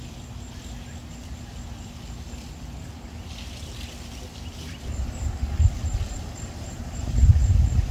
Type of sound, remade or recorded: remade